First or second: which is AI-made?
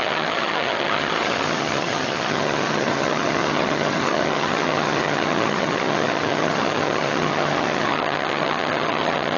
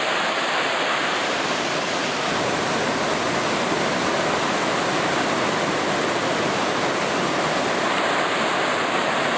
first